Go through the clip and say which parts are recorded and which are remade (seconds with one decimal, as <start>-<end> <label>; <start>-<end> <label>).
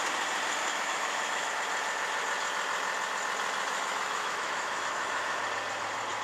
0.0-0.6 recorded; 0.6-1.5 remade; 1.5-3.7 recorded; 3.7-5.4 remade; 5.4-6.2 recorded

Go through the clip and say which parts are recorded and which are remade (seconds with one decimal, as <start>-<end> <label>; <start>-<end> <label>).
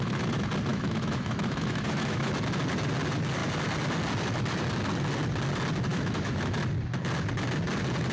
0.0-0.7 recorded; 0.7-2.3 remade; 2.3-5.9 recorded; 5.9-6.6 remade; 6.6-8.1 recorded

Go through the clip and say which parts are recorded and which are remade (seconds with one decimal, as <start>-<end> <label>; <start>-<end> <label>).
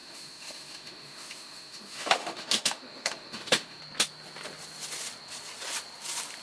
0.0-3.8 remade; 3.8-6.4 recorded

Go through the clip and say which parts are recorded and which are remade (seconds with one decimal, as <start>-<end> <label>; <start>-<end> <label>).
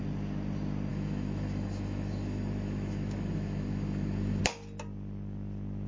0.0-0.9 recorded; 0.9-4.4 remade; 4.4-5.9 recorded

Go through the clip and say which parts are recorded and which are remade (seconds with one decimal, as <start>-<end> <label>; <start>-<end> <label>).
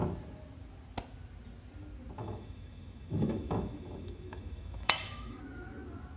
0.0-2.2 recorded; 2.2-5.4 remade; 5.4-6.2 recorded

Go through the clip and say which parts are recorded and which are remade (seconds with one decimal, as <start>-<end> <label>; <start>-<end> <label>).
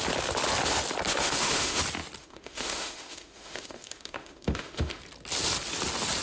0.0-1.1 recorded; 1.1-1.8 remade; 1.8-2.2 recorded; 2.2-5.0 remade; 5.0-6.2 recorded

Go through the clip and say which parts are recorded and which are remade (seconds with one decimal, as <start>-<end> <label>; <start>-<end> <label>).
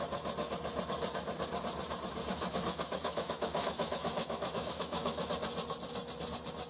0.0-2.3 recorded; 2.3-5.2 remade; 5.2-6.7 recorded